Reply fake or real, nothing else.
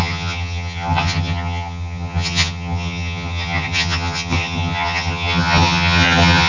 fake